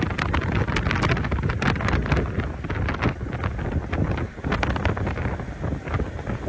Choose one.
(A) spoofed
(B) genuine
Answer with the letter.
B